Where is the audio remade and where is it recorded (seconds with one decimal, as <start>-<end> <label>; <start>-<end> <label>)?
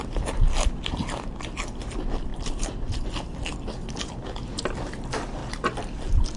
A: 0.0-2.3 recorded; 2.3-4.8 remade; 4.8-5.4 recorded; 5.4-6.4 remade